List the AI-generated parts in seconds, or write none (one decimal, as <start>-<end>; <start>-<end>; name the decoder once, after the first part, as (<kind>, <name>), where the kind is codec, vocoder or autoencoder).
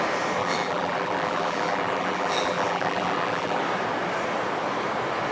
0.4-3.6 (vocoder, BigVGAN v2)